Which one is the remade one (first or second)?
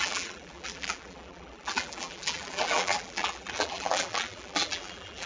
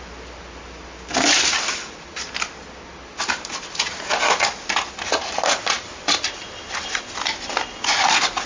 first